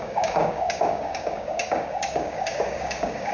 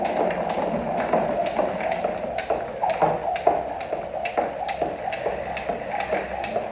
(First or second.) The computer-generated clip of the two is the first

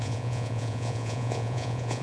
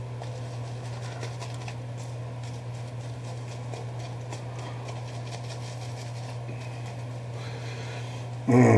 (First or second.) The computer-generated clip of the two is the first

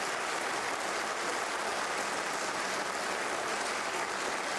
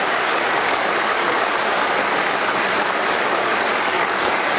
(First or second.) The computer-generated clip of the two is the second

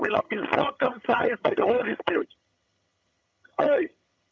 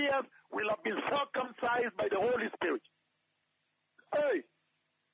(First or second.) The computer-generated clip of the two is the first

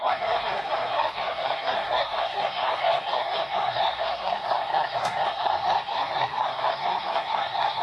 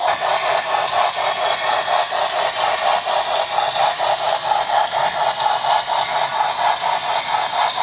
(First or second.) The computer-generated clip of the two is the first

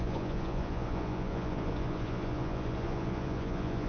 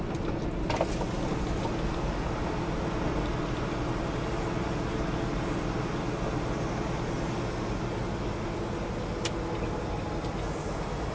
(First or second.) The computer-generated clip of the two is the first